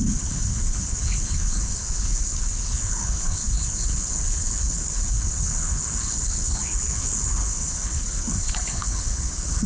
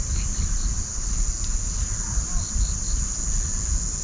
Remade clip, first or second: first